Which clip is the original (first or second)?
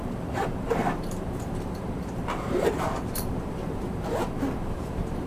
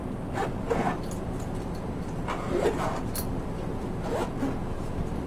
second